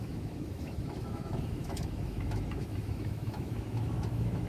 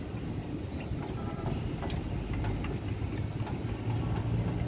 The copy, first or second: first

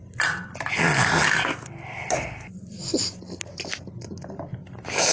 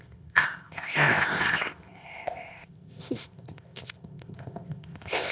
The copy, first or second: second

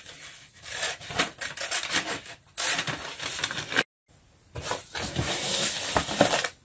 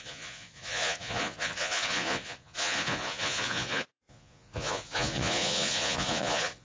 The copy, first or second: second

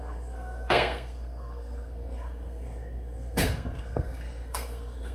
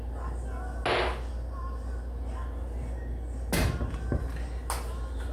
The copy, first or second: first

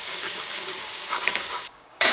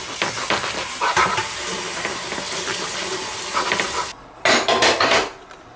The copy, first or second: first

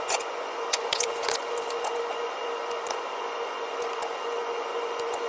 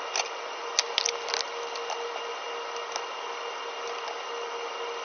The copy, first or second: first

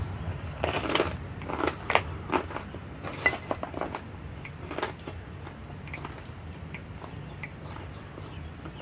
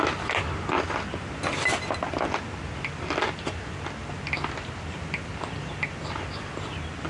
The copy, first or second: first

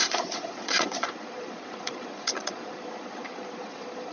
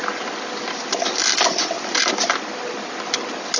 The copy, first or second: first